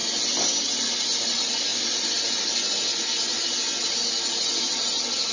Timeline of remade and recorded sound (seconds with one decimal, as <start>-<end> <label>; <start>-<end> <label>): 0.0-5.3 recorded